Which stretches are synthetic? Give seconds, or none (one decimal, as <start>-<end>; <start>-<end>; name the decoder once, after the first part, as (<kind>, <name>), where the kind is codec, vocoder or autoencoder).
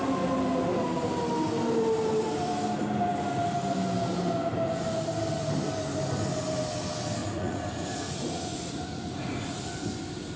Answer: 7.2-9.6 (vocoder, Vocos)